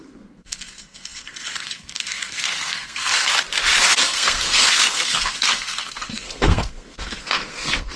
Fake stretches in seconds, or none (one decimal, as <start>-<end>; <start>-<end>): 0.0-3.3; 4.0-8.0

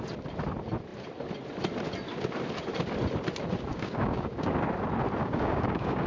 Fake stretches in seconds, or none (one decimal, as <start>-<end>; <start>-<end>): 3.7-4.5; 5.2-6.1

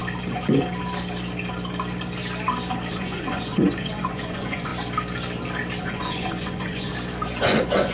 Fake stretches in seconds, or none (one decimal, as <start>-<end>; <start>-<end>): 2.9-4.7; 5.8-6.9; 7.4-7.9

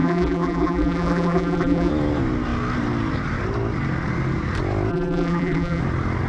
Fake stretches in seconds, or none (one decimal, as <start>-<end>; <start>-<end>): 0.0-1.9; 4.9-5.8

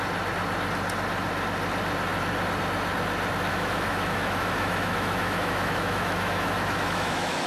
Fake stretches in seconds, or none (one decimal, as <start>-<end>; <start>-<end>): 3.5-7.5

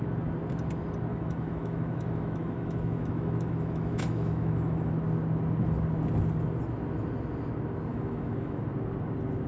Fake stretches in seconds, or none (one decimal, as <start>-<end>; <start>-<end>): 1.1-4.9; 7.9-8.6

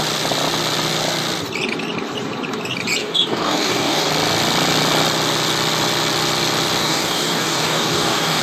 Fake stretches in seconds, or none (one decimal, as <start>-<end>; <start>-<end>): 3.0-4.1; 6.8-8.4